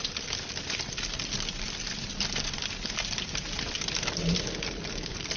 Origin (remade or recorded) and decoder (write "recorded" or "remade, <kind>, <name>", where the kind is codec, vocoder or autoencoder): recorded